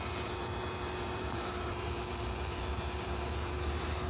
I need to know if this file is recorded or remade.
remade